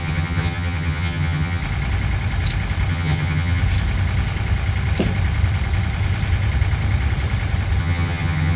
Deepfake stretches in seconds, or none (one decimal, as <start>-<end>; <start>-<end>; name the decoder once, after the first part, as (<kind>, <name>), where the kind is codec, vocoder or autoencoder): 0.0-1.6 (vocoder, HiFi-GAN); 2.9-3.6; 7.8-8.6